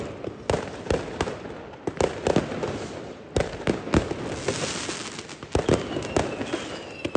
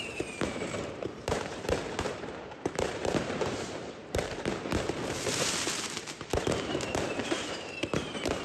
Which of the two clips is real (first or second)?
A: first